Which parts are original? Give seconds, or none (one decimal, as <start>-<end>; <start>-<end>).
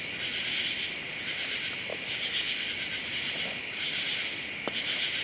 0.0-1.9; 2.7-5.2